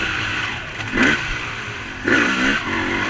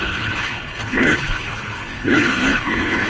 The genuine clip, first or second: first